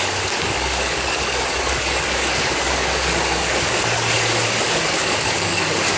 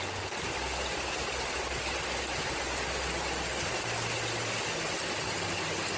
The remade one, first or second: first